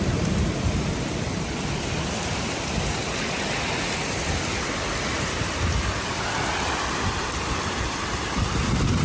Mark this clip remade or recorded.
remade